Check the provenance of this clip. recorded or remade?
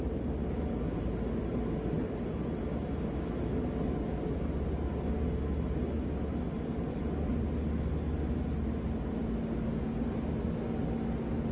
recorded